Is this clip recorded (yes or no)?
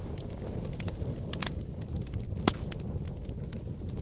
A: no